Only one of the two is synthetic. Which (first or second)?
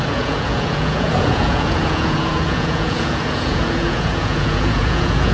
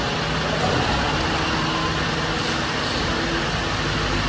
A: first